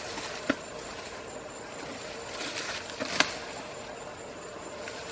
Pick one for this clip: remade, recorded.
recorded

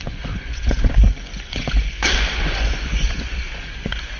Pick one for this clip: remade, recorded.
remade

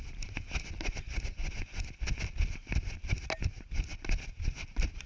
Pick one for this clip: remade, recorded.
recorded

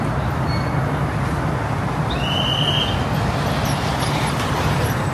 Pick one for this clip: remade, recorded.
recorded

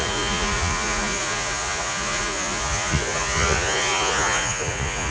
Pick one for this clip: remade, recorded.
remade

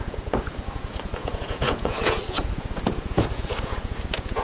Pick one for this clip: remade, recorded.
remade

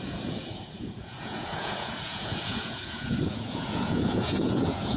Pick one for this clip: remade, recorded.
remade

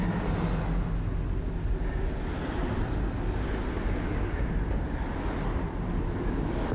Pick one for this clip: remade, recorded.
recorded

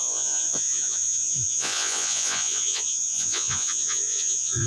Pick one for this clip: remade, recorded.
remade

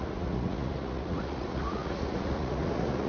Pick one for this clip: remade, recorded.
remade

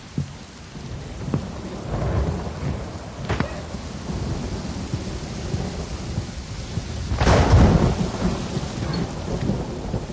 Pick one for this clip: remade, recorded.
recorded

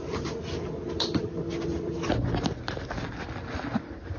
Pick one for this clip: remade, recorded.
recorded